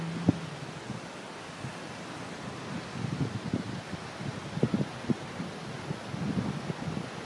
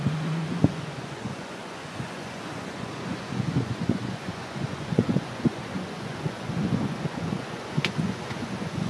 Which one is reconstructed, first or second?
second